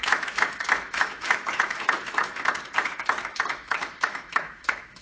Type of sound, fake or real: fake